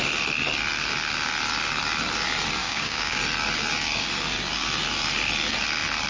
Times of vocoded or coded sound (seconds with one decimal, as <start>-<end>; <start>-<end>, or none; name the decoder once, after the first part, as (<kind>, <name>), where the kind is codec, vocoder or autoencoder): 2.6-3.2 (codec, DAC)

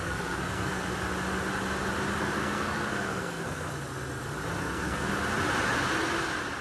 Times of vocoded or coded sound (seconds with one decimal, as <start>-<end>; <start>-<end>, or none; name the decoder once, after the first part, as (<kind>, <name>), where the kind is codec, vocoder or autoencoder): 0.0-0.9 (codec, SNAC); 2.2-3.7; 4.6-5.1

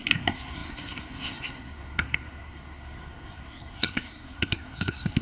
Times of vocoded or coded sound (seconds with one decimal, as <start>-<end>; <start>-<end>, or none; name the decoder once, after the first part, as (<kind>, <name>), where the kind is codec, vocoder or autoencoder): 0.0-5.2 (codec, SNAC)

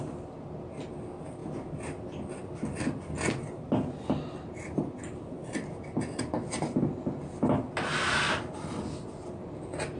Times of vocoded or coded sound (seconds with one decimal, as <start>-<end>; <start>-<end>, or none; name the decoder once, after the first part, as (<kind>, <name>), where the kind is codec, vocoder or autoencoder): none

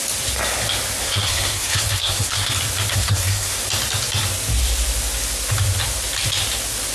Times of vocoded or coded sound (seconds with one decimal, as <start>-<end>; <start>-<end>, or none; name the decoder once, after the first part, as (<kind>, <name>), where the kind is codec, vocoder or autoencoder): 1.0-2.5 (codec, SNAC); 2.9-3.6

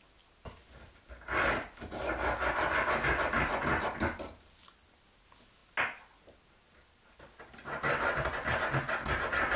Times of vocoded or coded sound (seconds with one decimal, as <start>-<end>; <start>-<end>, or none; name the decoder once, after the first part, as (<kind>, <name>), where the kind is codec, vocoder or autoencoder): none

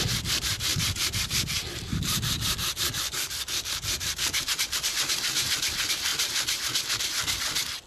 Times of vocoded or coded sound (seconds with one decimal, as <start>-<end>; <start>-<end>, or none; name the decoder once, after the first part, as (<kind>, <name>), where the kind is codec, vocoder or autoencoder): 0.7-5.1 (vocoder, BigVGAN v2)

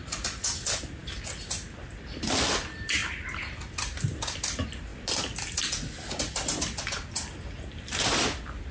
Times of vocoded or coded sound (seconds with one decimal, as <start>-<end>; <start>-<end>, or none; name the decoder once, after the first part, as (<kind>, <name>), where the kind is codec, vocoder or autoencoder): 1.0-1.9 (vocoder, BigVGAN v2)